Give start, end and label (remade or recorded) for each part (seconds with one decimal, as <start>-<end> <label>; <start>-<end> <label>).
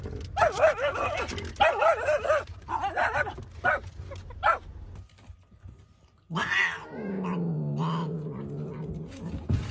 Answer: 0.0-9.7 recorded